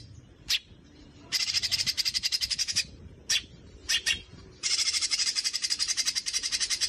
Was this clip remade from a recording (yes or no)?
yes